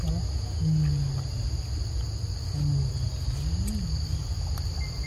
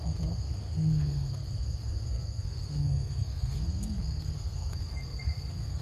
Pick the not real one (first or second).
second